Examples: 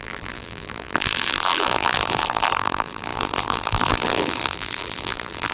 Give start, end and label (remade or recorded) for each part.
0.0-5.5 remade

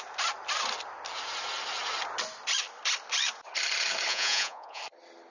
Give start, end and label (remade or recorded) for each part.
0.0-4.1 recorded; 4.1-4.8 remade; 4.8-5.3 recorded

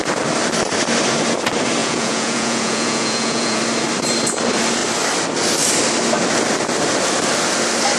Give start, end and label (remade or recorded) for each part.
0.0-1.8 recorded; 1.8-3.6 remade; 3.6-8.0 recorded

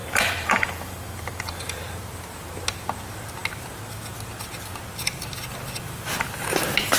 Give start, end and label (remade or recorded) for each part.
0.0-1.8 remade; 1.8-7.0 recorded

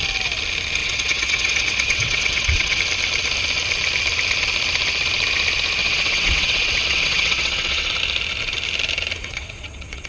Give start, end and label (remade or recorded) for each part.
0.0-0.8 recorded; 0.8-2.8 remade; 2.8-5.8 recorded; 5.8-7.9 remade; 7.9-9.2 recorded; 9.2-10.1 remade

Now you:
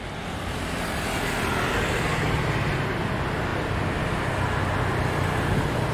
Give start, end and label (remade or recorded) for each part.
0.0-5.9 recorded

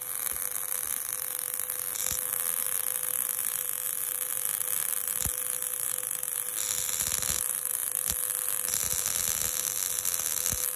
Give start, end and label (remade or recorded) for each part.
0.0-10.8 recorded